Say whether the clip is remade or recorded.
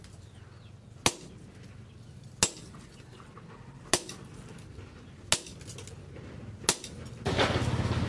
recorded